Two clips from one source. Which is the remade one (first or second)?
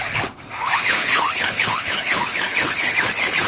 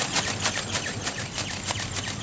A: first